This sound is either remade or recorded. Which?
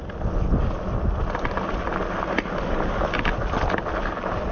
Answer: recorded